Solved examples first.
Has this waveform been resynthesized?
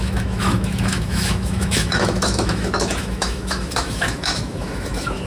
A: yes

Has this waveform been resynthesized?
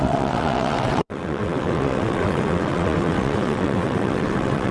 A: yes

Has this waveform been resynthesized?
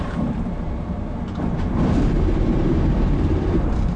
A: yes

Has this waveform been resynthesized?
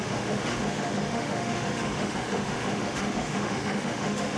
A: yes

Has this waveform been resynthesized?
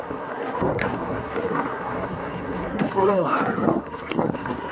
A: yes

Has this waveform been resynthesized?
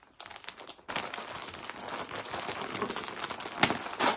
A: no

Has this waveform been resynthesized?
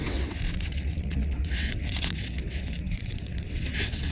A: yes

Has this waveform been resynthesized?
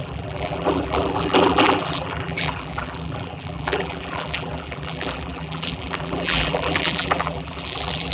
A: yes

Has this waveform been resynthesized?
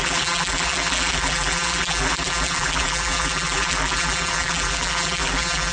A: yes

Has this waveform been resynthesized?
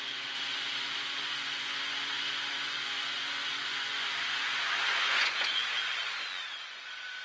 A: yes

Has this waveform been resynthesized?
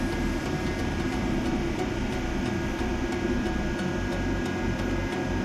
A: no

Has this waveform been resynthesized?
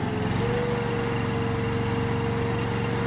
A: no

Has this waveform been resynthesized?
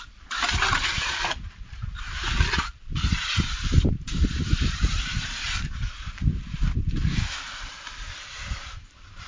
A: yes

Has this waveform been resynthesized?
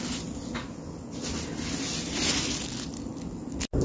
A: no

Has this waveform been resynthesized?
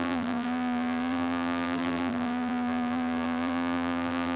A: yes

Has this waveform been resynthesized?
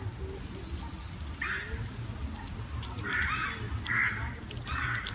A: no